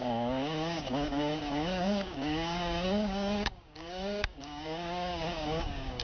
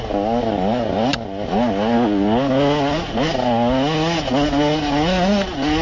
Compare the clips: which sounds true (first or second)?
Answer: second